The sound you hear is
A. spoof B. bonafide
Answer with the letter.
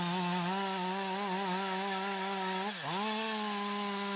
B